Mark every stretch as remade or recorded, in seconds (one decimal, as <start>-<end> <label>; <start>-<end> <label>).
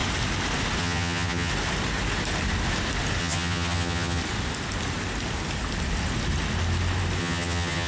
0.0-0.8 recorded; 0.8-1.5 remade; 1.5-3.2 recorded; 3.2-4.2 remade; 4.2-7.2 recorded; 7.2-7.9 remade